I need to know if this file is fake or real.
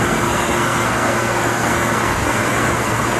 fake